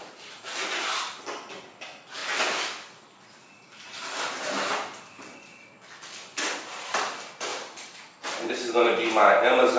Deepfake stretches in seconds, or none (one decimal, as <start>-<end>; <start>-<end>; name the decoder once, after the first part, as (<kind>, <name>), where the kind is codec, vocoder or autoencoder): none